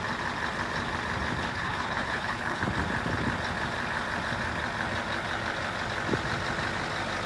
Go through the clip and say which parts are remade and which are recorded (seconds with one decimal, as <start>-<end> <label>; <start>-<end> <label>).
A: 0.0-1.5 recorded; 1.5-2.6 remade; 2.6-7.3 recorded